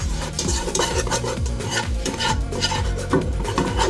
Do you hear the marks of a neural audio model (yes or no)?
yes